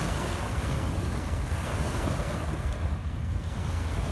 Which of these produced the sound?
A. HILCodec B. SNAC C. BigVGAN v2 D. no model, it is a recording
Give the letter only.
B